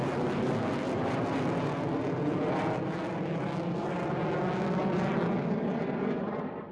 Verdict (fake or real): real